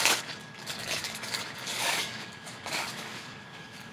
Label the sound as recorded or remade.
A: remade